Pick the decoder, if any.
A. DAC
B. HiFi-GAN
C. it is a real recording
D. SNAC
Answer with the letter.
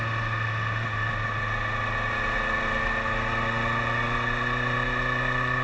C